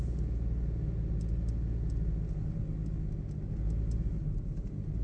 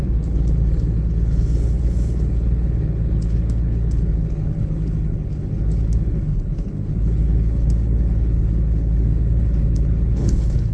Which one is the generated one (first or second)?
second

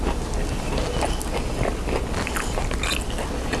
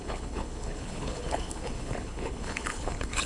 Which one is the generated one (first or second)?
second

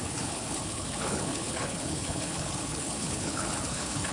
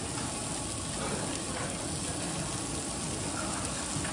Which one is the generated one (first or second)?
first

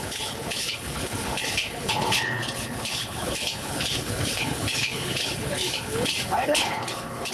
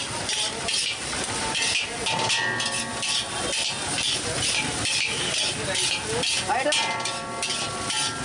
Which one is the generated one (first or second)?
first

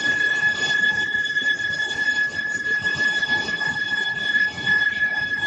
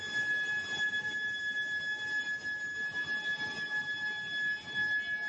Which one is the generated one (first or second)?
first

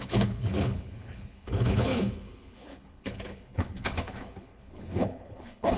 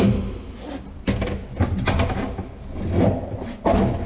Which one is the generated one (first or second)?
first